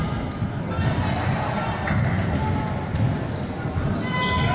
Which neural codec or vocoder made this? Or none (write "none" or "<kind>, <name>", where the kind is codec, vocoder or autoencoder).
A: none